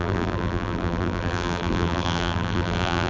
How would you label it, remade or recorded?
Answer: remade